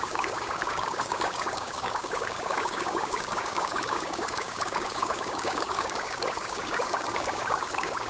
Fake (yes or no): yes